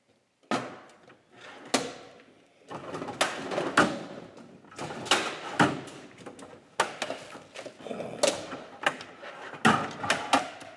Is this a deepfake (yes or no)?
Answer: no